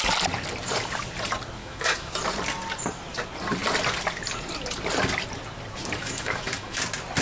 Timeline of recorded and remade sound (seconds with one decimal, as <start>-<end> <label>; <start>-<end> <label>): 0.0-1.6 recorded; 1.6-2.1 remade; 2.1-6.0 recorded; 6.0-6.8 remade; 6.8-7.2 recorded